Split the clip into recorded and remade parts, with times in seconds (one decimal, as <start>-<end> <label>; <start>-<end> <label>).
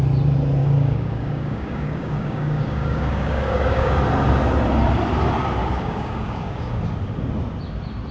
0.0-0.6 recorded; 0.6-4.0 remade; 4.0-5.6 recorded; 5.6-6.8 remade; 6.8-8.1 recorded